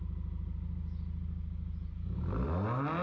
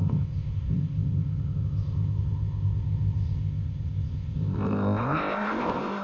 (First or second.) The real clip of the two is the first